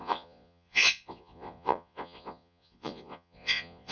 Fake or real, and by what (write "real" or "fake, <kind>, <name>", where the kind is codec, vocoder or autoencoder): fake, vocoder, Vocos